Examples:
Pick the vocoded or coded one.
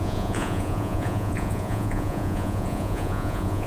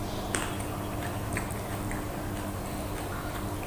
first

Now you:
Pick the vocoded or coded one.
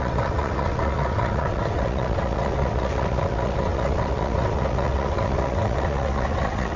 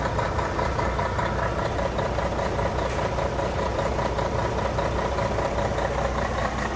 first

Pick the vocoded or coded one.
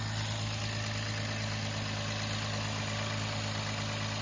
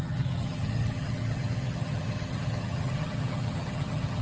second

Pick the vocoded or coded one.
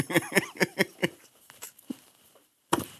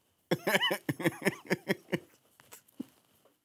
first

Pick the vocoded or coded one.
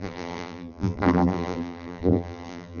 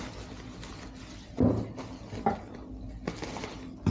first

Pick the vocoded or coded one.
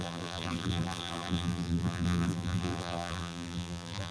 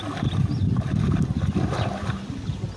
first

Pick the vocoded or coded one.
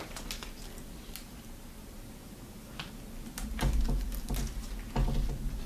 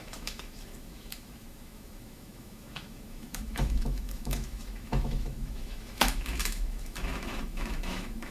second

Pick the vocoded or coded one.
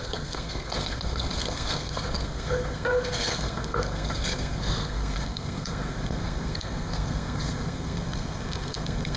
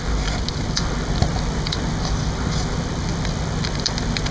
first